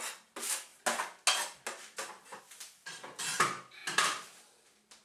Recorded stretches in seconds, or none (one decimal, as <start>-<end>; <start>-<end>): 0.0-5.0